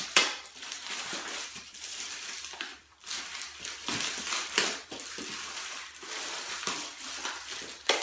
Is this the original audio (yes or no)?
no